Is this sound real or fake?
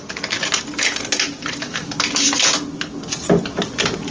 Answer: real